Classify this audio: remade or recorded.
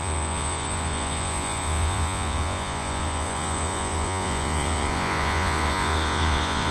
remade